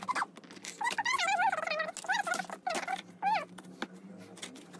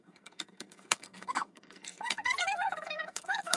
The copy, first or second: second